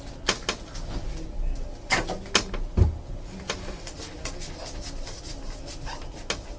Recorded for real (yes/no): yes